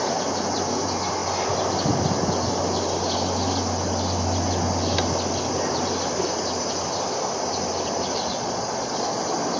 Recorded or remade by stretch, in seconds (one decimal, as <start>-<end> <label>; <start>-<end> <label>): 0.0-8.3 recorded; 8.3-9.2 remade; 9.2-9.6 recorded